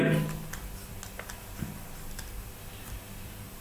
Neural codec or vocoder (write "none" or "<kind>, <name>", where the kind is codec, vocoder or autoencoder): none